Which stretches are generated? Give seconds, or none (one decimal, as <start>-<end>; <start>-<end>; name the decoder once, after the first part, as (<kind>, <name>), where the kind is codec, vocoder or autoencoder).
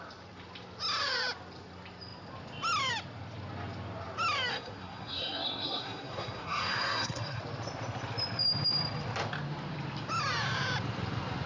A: 4.5-7.4 (codec, SNAC)